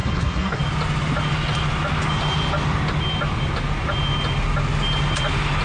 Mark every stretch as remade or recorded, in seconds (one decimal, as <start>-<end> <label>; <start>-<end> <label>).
0.0-0.6 remade; 0.6-5.6 recorded